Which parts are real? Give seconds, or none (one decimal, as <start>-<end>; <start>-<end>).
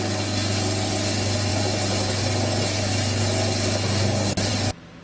0.0-5.0